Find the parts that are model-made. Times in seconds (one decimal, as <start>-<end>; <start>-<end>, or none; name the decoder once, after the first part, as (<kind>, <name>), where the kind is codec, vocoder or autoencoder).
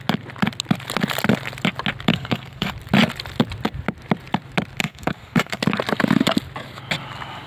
2.1-2.7 (codec, SNAC); 4.8-5.6